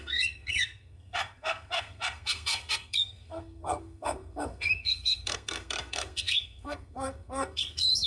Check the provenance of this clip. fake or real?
fake